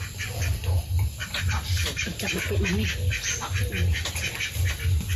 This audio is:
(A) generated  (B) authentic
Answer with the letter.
A